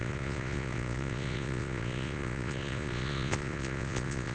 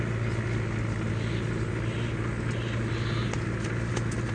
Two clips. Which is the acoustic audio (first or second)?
second